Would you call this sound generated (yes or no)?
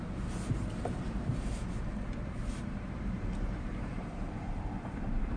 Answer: yes